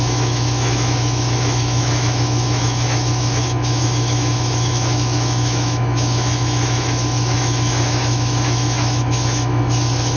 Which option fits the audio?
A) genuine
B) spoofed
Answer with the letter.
B